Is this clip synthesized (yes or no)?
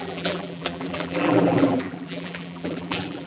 yes